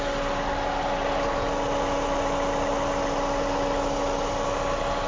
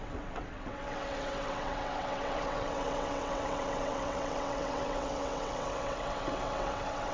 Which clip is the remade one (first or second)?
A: second